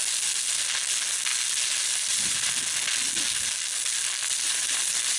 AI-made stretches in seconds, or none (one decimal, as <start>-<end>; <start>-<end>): 1.3-2.6; 4.2-5.2